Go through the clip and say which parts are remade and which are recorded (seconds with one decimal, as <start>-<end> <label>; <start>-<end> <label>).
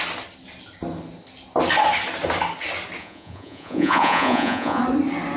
0.0-3.0 recorded; 3.0-4.8 remade; 4.8-5.4 recorded